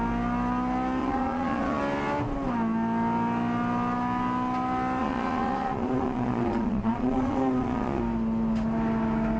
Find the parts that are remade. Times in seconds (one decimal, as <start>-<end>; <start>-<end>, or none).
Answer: 1.0-1.8; 5.0-8.0